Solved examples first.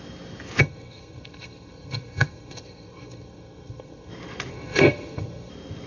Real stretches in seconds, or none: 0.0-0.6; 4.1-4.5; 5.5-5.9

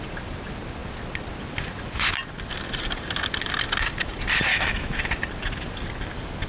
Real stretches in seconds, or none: 0.0-4.5; 5.0-6.5

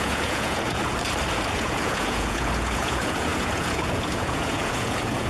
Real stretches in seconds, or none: 0.8-1.5

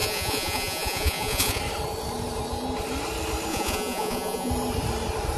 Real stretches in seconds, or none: 1.6-3.5; 4.5-5.4

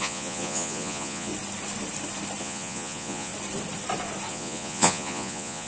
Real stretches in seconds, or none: 1.3-2.4; 3.3-4.3

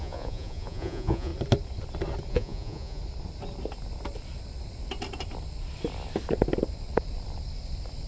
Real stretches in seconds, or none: 1.3-2.3; 3.0-8.1